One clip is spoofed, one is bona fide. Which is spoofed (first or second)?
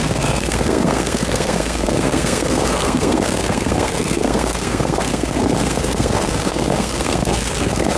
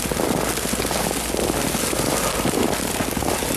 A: first